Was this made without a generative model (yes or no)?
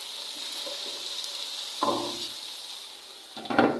yes